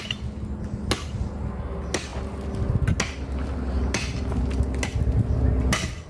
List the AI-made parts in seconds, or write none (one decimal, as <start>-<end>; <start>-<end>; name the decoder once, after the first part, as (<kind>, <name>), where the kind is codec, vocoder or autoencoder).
none